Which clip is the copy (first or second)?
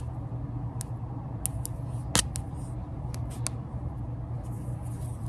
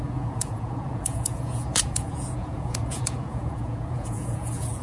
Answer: second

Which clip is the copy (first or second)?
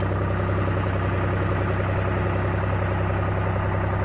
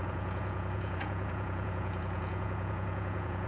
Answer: second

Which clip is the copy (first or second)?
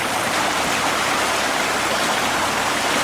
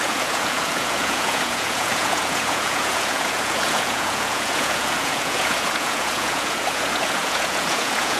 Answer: second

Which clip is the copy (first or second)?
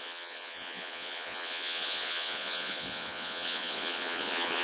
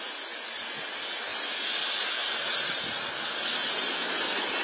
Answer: first